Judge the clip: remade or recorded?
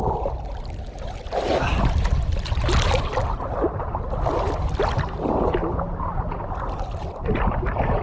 recorded